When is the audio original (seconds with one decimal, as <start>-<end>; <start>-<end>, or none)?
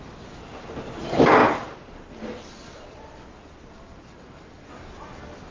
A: 0.0-5.5